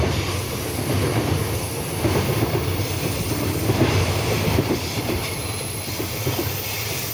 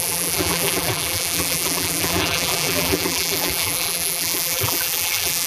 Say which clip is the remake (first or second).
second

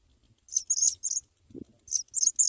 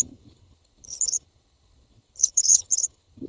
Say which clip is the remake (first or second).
second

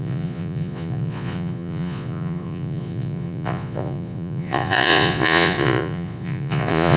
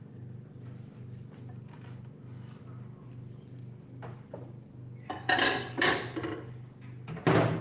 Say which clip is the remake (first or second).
first